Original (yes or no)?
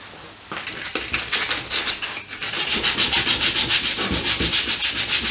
yes